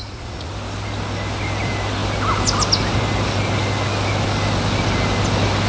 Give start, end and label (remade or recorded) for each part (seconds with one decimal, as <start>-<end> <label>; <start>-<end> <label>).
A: 0.0-0.5 remade; 0.5-5.7 recorded